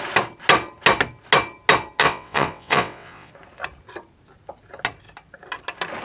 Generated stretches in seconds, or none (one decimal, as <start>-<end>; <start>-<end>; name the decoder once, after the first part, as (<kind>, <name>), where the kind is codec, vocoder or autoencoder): 2.0-3.3 (vocoder, WaveNeXt)